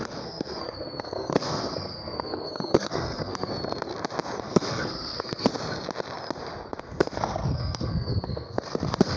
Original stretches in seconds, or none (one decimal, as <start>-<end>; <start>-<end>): 3.5-4.4; 5.5-6.8